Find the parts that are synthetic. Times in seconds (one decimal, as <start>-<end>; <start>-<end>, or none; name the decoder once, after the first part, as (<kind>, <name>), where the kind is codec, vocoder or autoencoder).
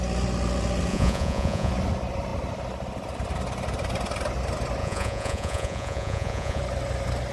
0.9-1.7 (vocoder, Vocos); 4.8-6.6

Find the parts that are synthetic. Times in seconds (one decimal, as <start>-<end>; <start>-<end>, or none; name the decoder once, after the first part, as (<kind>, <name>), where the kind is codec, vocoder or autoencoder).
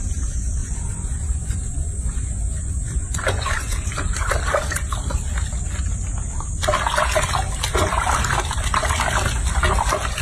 0.6-4.3 (vocoder, Vocos)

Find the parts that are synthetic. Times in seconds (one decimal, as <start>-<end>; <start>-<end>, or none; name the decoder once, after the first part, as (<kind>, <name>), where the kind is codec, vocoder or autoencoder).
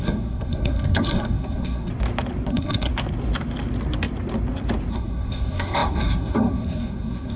0.0-1.9 (codec, SNAC); 2.5-2.9; 4.9-7.4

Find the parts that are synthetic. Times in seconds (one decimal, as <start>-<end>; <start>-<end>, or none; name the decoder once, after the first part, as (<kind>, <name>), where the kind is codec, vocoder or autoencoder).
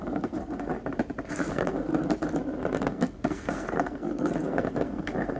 0.0-0.7 (codec, SNAC); 1.3-1.9; 2.8-5.4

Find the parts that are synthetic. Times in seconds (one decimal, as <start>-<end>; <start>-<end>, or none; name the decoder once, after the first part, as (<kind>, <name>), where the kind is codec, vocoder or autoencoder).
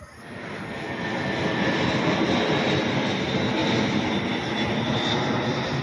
none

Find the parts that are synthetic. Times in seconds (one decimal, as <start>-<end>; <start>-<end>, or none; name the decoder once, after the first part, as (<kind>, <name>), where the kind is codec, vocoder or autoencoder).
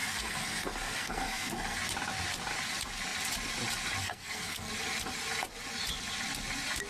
0.0-1.8 (codec, SNAC); 4.0-4.7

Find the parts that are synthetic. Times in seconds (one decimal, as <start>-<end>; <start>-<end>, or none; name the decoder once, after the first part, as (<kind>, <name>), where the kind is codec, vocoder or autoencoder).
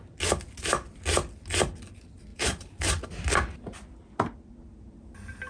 2.3-2.8 (vocoder, BigVGAN v2)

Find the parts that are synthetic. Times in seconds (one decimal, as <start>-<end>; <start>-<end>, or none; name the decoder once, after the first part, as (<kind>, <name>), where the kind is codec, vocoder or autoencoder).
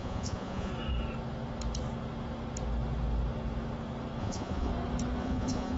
0.0-0.7 (vocoder, Vocos); 4.2-4.7; 5.2-5.8